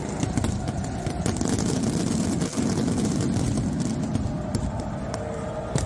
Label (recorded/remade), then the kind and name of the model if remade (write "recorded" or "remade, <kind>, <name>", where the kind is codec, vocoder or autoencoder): recorded